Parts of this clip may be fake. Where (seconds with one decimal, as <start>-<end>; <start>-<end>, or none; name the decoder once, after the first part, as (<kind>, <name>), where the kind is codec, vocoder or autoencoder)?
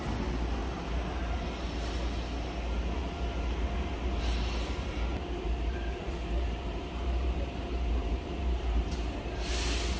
5.1-9.2 (vocoder, BigVGAN v2)